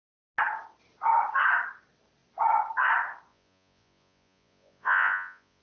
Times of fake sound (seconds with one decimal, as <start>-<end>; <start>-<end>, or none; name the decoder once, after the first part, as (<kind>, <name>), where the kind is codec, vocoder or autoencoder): 3.3-5.6 (vocoder, Vocos)